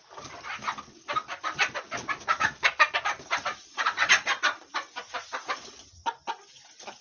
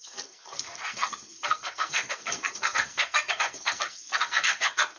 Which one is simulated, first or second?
second